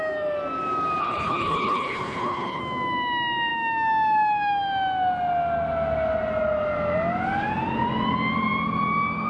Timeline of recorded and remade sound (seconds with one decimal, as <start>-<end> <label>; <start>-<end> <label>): 0.0-1.0 recorded; 1.0-2.6 remade; 2.6-9.3 recorded